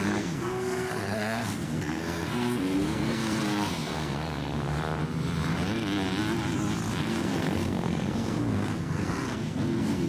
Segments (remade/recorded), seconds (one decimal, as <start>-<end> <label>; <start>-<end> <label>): 0.0-5.0 remade; 5.0-7.0 recorded; 7.0-10.1 remade